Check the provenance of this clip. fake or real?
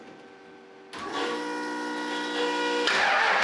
real